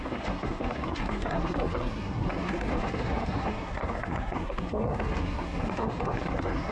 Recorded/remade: remade